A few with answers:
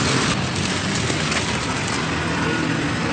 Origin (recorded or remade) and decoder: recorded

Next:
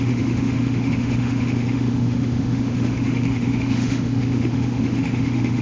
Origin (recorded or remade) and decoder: remade, autoencoder, DAC-VAE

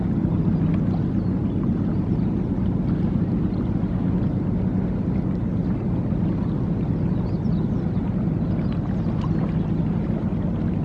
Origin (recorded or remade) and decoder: recorded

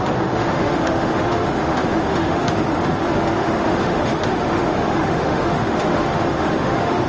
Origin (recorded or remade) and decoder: remade, autoencoder, DAC-VAE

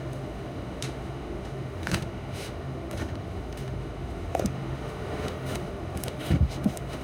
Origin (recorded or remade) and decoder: remade, autoencoder, DAC-VAE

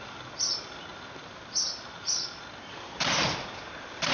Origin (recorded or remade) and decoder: recorded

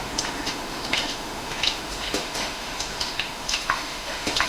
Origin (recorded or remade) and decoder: remade, autoencoder, DAC-VAE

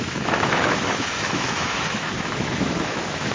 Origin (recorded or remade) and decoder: remade, autoencoder, DAC-VAE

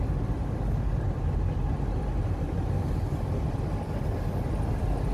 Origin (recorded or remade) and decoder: recorded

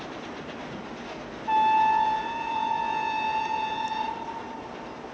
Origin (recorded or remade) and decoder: recorded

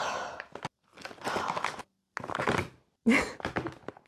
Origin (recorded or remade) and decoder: recorded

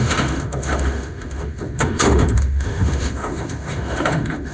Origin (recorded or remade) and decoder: remade, autoencoder, DAC-VAE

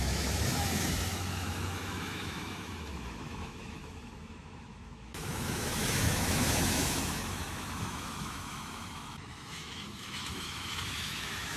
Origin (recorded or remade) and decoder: remade, autoencoder, DAC-VAE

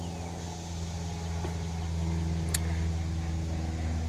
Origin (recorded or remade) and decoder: recorded